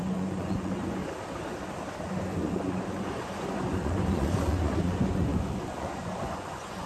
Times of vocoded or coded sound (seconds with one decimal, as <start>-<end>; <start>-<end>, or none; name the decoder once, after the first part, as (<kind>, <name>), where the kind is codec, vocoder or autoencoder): 0.0-1.0 (vocoder, Vocos); 2.4-6.9